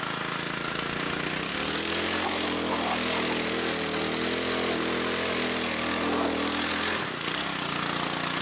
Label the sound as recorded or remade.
recorded